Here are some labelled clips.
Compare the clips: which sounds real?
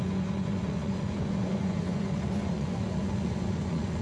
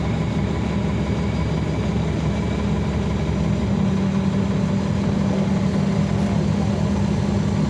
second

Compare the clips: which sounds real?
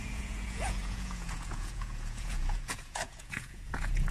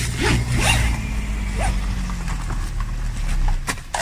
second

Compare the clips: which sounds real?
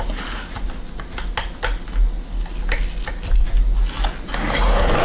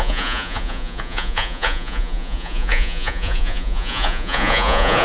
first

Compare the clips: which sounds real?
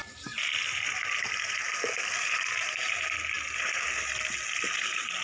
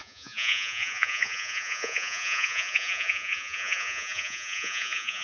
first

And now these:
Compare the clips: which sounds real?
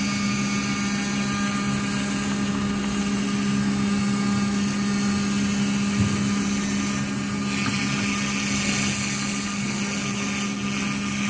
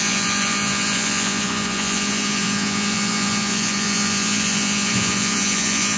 first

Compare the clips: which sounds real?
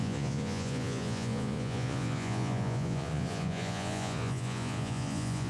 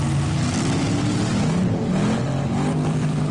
second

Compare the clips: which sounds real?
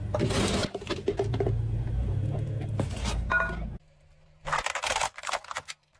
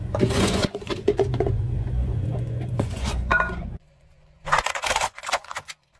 first